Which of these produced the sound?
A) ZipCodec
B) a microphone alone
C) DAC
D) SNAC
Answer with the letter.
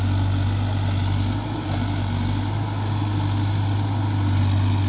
B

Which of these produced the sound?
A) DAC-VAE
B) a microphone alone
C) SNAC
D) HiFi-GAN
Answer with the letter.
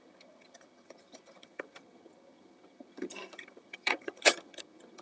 D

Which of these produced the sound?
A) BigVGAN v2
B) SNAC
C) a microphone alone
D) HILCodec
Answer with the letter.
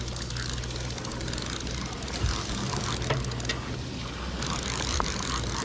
C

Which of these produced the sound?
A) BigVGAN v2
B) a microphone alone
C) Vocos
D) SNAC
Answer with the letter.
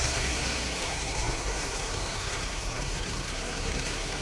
D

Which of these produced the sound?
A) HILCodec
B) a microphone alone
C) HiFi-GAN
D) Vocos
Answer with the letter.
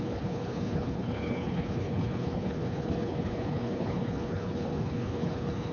A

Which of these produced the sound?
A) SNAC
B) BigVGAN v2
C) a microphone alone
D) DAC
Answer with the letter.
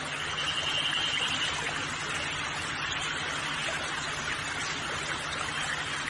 C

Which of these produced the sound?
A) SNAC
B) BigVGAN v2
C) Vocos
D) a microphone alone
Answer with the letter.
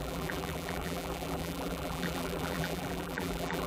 B